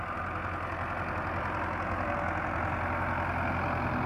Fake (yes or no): no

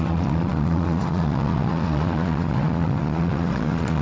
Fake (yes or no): yes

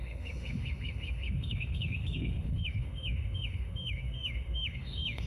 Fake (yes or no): yes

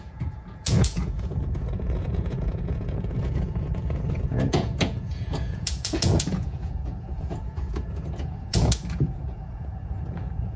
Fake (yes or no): yes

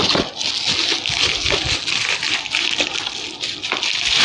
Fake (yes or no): no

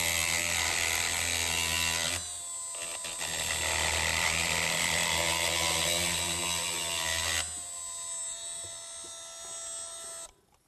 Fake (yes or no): no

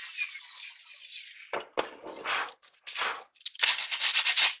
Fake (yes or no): no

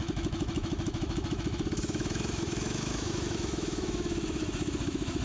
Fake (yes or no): yes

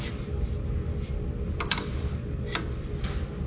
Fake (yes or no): no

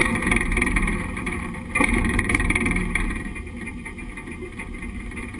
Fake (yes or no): yes